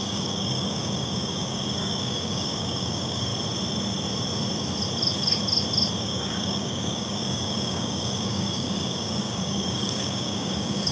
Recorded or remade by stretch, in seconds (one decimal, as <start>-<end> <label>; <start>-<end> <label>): 0.0-3.3 remade; 3.3-5.9 recorded; 5.9-10.9 remade